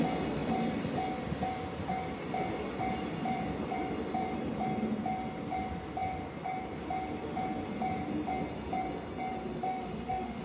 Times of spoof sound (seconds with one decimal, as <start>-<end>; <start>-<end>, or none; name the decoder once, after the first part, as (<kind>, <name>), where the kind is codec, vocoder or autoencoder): 9.6-10.4 (autoencoder, DAC-VAE)